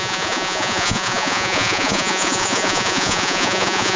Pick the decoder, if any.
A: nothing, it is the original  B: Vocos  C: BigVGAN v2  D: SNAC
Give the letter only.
B